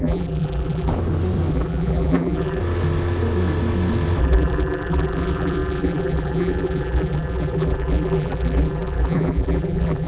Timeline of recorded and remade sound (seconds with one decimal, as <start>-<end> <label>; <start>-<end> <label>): 0.0-0.9 remade; 0.9-1.5 recorded; 1.5-2.6 remade; 2.6-4.2 recorded; 4.2-10.1 remade